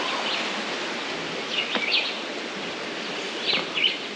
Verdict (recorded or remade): recorded